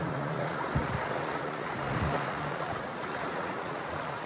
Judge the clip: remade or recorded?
remade